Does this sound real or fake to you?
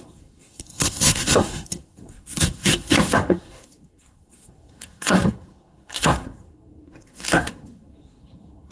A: fake